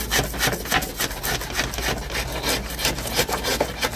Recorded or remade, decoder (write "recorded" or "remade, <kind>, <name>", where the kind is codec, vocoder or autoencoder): recorded